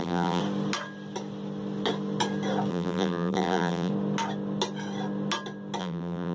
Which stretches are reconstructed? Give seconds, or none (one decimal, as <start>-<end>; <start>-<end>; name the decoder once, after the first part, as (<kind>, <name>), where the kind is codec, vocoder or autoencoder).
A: 0.0-0.4 (vocoder, BigVGAN v2); 2.7-3.9; 5.8-6.3